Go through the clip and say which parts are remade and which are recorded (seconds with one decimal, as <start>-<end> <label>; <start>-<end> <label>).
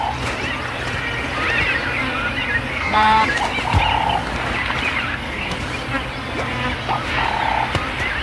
0.0-2.7 recorded; 2.7-3.2 remade; 3.2-5.1 recorded; 5.1-5.6 remade; 5.6-8.2 recorded